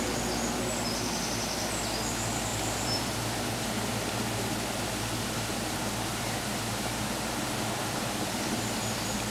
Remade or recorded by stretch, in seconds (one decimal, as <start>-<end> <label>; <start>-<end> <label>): 0.0-2.5 recorded; 2.5-3.4 remade; 3.4-9.3 recorded